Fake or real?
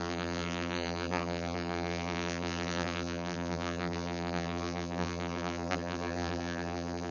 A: fake